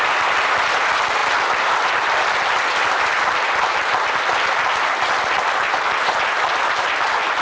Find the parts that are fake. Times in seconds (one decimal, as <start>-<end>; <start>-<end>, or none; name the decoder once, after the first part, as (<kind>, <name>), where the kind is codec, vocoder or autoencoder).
none